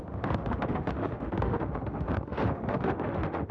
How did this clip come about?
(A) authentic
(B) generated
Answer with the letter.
B